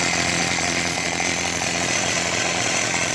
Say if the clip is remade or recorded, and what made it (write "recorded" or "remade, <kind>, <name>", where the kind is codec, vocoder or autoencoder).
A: remade, vocoder, Vocos